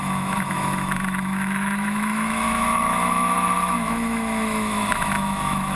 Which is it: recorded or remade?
remade